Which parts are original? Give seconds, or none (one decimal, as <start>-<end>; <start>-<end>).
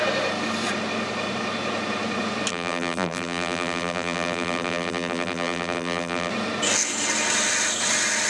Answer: 0.0-2.5; 6.3-8.3